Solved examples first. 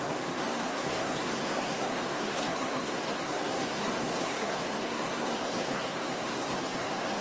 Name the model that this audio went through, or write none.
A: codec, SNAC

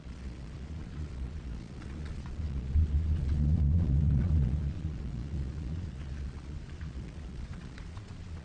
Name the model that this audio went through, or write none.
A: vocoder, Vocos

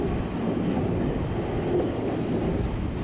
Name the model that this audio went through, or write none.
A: none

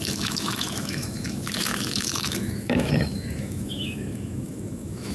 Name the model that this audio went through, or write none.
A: autoencoder, DAC-VAE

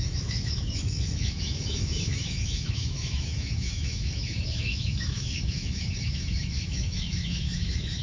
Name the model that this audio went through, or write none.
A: autoencoder, DAC-VAE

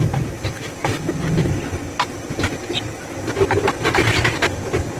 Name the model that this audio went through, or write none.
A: none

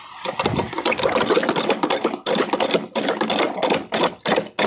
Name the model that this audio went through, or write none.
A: none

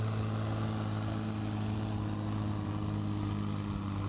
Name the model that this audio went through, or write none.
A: none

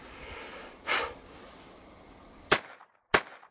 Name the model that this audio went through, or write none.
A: none